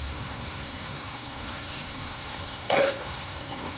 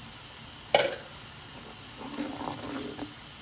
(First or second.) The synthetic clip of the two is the first